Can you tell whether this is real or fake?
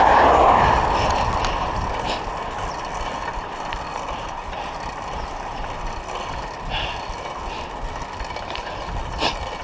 real